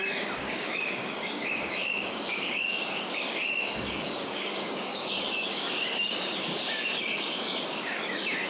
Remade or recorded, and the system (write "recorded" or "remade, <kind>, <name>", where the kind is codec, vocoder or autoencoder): remade, codec, DAC